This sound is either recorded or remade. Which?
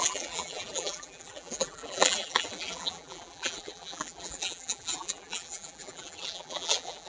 remade